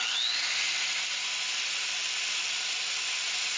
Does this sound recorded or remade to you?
recorded